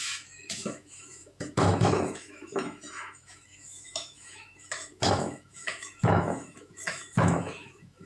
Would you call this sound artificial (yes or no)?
yes